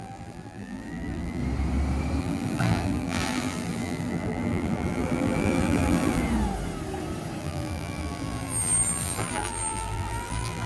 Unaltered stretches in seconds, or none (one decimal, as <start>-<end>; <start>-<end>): 1.4-2.2; 6.2-7.4